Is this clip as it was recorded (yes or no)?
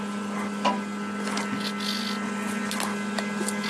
yes